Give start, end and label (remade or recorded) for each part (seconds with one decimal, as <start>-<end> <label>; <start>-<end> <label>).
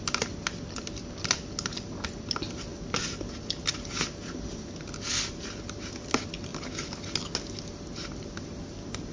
0.0-9.1 recorded